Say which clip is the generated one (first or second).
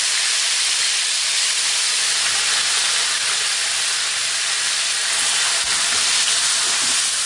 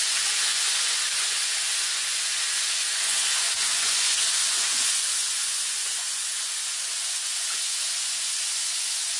second